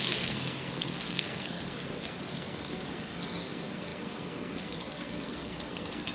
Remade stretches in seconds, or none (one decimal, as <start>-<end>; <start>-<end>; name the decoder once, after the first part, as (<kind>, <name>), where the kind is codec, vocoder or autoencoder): 0.0-6.1 (codec, SNAC)